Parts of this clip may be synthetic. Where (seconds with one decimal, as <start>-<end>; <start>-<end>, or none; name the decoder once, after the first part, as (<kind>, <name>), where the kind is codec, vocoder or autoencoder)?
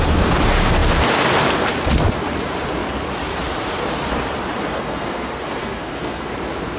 4.7-6.3 (codec, SNAC)